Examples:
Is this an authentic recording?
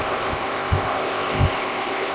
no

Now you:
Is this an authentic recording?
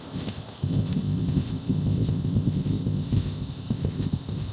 no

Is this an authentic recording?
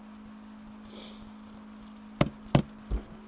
yes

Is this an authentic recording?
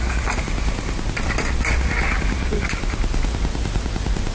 yes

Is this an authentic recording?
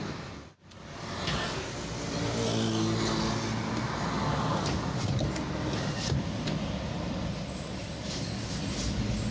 yes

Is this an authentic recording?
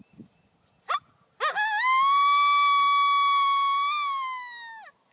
yes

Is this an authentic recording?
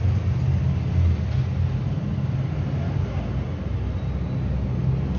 yes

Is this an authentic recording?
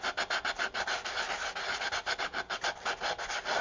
yes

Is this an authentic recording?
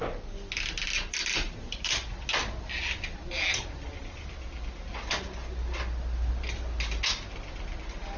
yes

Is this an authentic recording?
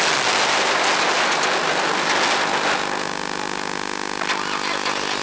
yes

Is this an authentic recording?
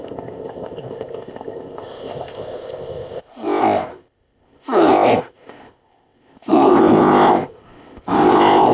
no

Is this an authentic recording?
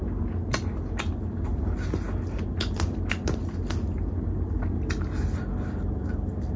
yes